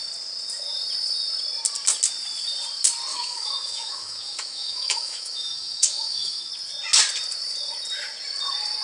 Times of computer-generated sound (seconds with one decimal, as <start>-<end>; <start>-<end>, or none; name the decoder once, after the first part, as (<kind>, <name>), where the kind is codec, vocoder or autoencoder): 3.1-6.5 (autoencoder, DAC-VAE)